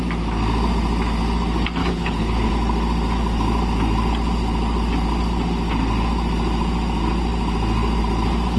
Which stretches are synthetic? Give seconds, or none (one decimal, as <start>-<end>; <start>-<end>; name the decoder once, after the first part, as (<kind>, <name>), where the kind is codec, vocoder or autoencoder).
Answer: 1.8-2.5 (codec, HILCodec)